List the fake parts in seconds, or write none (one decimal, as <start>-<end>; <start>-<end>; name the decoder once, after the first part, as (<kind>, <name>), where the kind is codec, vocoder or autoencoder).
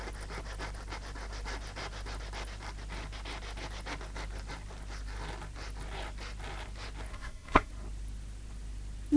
7.1-7.7 (codec, SNAC)